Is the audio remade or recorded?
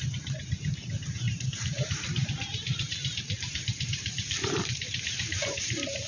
remade